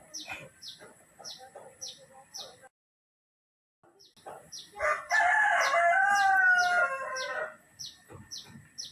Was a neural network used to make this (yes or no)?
no